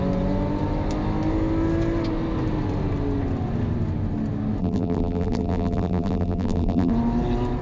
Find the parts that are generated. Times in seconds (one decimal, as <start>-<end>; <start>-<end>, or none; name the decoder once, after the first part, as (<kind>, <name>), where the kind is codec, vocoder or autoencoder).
4.6-6.9 (vocoder, BigVGAN v2)